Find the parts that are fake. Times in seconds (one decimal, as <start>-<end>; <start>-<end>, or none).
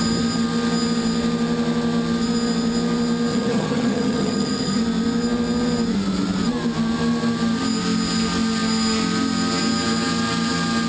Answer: 3.3-4.8